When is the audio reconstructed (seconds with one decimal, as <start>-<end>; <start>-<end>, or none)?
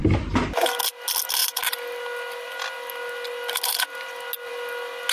none